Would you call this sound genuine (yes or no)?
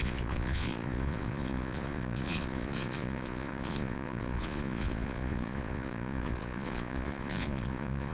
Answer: no